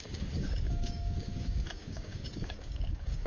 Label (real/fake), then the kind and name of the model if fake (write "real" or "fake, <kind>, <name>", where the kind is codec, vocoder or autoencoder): fake, codec, DAC